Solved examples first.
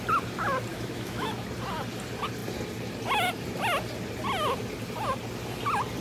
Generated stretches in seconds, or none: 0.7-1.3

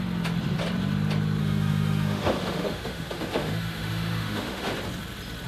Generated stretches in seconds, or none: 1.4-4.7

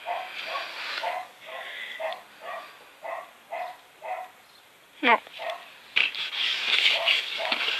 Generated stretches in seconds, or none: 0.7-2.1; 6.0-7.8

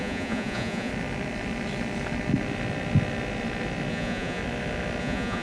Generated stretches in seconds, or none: 0.0-0.9; 3.9-4.4; 5.0-5.4

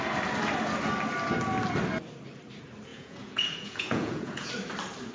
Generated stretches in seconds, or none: 2.9-4.5

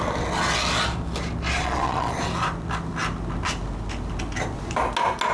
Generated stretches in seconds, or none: 1.6-2.2

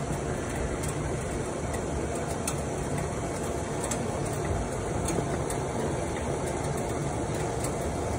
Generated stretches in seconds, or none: none